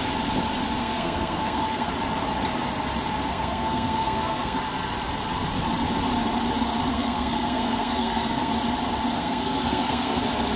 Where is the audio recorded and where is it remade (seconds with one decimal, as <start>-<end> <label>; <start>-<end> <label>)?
0.0-0.8 recorded; 0.8-1.9 remade; 1.9-3.3 recorded; 3.3-4.6 remade; 4.6-6.9 recorded; 6.9-8.5 remade; 8.5-9.2 recorded; 9.2-10.2 remade; 10.2-10.6 recorded